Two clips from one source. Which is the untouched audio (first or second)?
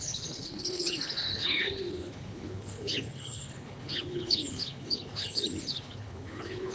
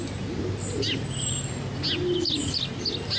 second